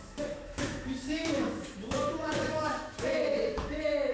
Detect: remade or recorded remade